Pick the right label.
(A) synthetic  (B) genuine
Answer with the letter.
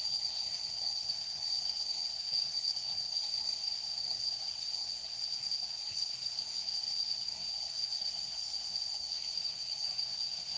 A